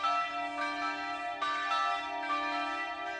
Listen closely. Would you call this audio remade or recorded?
recorded